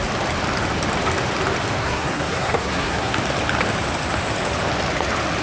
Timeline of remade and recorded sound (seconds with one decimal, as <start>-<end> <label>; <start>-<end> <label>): 0.0-1.8 recorded; 1.8-3.2 remade; 3.2-5.4 recorded